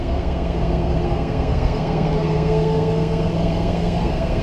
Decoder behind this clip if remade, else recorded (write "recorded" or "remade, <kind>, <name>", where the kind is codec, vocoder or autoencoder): remade, codec, SNAC